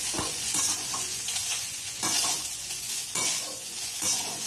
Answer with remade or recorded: remade